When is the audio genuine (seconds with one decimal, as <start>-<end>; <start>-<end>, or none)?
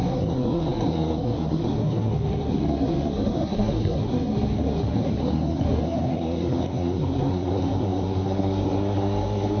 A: none